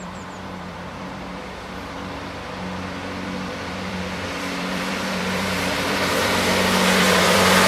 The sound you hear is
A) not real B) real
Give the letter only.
A